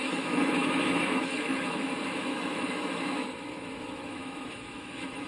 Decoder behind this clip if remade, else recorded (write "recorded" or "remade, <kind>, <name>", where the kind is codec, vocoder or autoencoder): remade, autoencoder, DAC-VAE